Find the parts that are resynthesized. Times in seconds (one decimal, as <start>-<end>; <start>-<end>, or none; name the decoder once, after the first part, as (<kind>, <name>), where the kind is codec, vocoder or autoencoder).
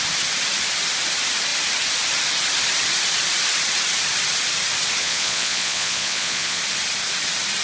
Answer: 5.0-6.6 (vocoder, Vocos)